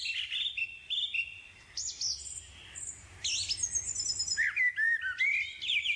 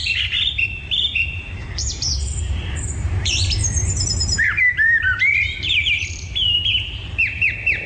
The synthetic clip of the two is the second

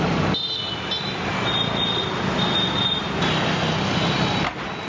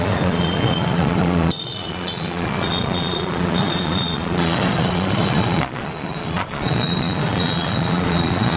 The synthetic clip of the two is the second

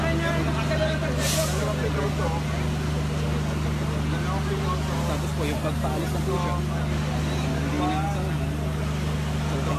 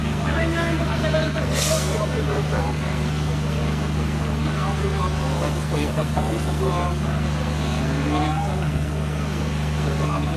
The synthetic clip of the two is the second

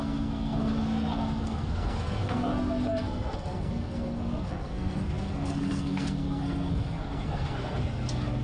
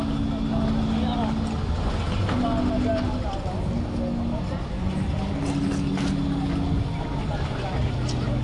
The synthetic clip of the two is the first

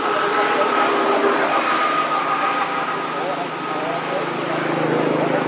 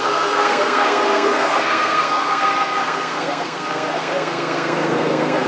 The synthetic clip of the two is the second